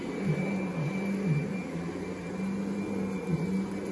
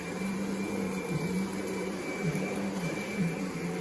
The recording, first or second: first